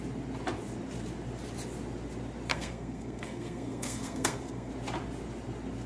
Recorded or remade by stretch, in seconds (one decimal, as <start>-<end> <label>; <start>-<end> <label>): 0.0-2.5 recorded; 2.5-4.7 remade; 4.7-5.9 recorded